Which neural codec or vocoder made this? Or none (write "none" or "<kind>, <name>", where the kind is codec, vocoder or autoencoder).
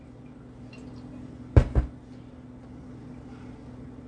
none